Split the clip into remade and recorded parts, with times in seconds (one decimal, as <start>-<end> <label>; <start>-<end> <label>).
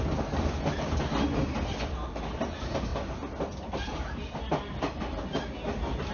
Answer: 0.0-6.1 recorded